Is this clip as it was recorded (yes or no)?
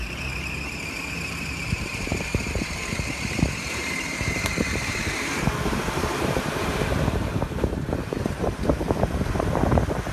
no